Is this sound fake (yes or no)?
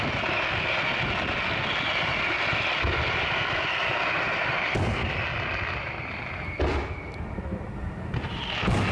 no